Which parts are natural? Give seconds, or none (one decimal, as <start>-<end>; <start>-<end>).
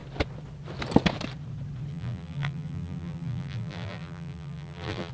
0.0-1.9